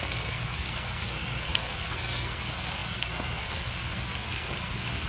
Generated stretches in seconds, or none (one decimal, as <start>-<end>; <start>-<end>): 0.0-5.1